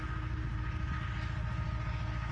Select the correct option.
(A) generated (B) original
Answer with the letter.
B